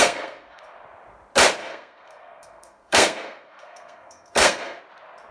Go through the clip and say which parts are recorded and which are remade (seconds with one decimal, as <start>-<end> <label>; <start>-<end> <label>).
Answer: 0.0-0.6 remade; 0.6-1.6 recorded; 1.6-4.8 remade; 4.8-5.3 recorded